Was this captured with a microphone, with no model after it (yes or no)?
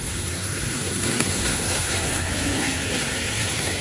no